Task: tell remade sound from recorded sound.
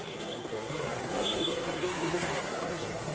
remade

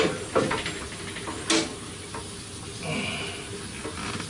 recorded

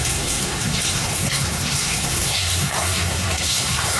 remade